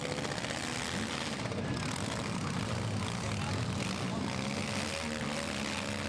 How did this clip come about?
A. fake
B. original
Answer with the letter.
B